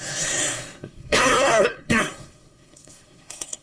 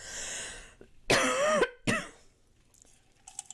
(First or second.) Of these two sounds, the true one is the second